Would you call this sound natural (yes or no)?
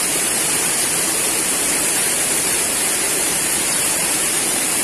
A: no